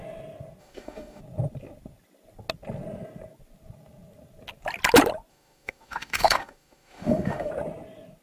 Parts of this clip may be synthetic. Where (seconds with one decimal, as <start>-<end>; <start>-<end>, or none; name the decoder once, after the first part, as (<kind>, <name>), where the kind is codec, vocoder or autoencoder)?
0.6-1.2 (autoencoder, DAC-VAE); 5.3-7.5